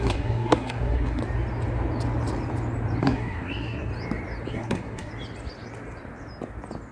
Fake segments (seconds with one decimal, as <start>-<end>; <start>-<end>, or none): 0.0-1.2; 3.0-3.9; 4.5-5.1